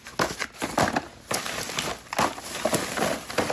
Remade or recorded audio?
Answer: recorded